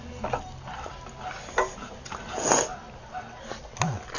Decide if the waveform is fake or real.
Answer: real